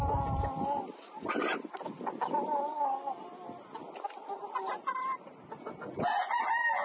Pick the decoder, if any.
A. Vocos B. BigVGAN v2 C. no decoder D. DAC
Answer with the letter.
C